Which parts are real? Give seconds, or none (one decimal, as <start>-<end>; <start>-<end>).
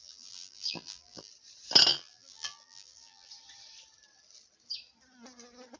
1.3-1.9; 3.3-5.8